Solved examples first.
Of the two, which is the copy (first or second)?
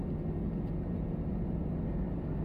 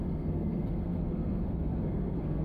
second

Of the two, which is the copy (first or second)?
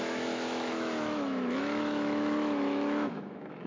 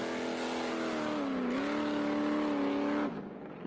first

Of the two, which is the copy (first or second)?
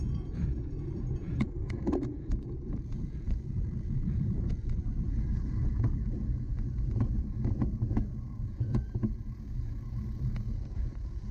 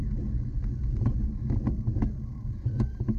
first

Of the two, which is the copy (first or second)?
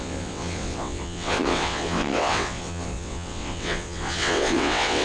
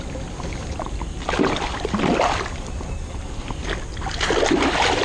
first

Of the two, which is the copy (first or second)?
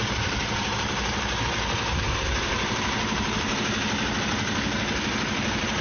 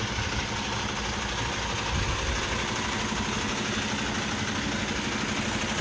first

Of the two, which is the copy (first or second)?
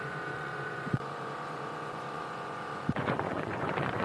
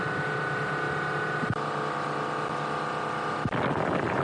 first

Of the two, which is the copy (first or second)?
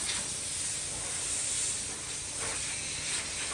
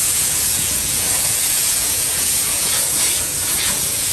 second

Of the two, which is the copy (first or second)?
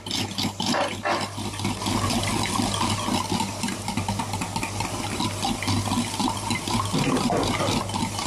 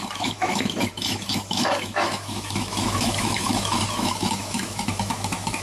second